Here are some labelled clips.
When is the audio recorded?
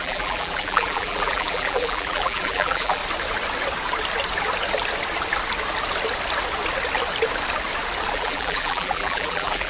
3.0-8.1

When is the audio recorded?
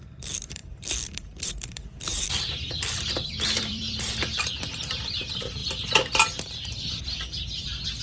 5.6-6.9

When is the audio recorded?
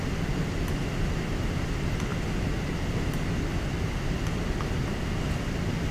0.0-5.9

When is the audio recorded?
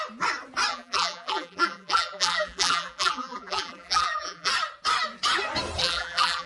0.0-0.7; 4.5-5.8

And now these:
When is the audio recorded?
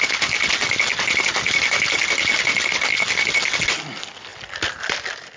0.0-4.3